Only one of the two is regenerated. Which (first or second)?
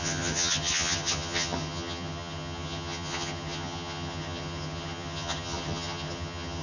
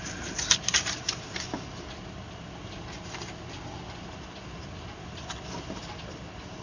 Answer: first